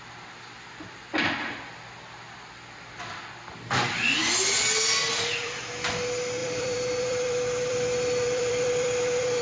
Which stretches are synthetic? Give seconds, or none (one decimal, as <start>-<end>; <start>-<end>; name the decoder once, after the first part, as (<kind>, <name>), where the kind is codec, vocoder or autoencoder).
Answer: 5.0-5.7 (vocoder, BigVGAN v2); 6.4-9.4